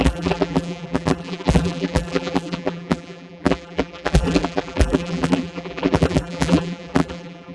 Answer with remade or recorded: remade